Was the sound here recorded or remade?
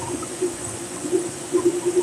remade